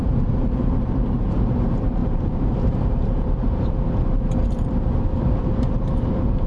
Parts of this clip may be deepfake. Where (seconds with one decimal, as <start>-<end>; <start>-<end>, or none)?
0.0-6.5